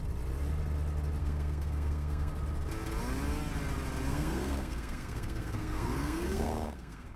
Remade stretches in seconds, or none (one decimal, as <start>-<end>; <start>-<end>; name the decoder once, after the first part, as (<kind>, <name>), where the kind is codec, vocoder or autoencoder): 1.2-2.3 (codec, SNAC); 4.1-7.2